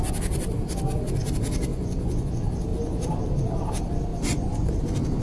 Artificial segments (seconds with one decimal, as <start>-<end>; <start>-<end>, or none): 1.7-2.3; 2.7-3.2; 4.1-4.8